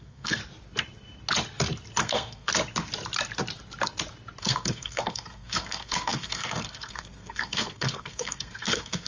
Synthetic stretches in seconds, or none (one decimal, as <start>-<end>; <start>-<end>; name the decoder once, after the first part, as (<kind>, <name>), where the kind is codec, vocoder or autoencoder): 0.0-0.4 (codec, SNAC); 2.0-2.5; 4.4-9.1